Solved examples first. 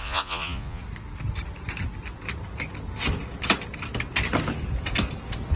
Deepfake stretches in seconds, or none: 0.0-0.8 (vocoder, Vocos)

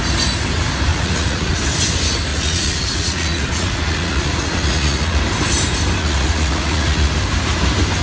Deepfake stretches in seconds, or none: 0.9-1.6 (vocoder, Vocos); 2.3-5.2; 6.0-7.1

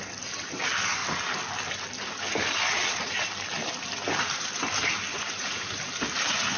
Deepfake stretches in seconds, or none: 5.1-5.8 (vocoder, Vocos)

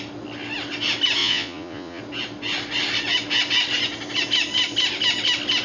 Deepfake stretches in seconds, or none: 1.2-2.0 (vocoder, Vocos)

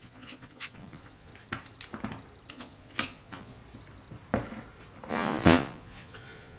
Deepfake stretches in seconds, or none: 0.0-1.3 (vocoder, Vocos); 2.5-3.6; 5.1-6.6